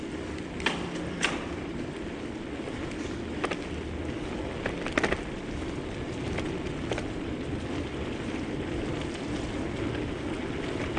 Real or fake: real